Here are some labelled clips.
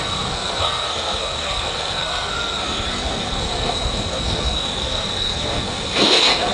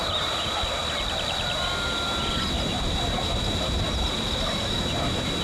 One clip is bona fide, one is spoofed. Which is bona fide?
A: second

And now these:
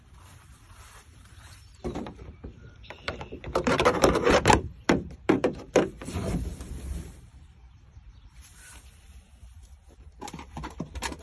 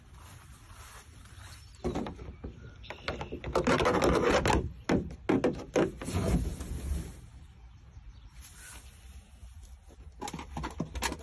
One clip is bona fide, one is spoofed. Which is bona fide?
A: second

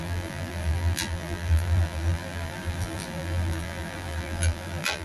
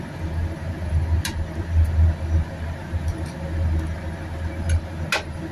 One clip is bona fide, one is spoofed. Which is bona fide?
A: second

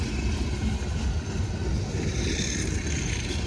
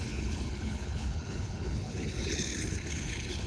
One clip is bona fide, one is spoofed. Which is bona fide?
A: first